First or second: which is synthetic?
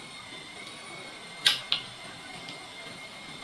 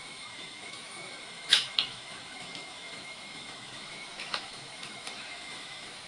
second